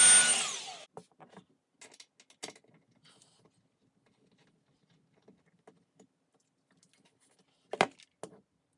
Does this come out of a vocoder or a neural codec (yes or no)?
no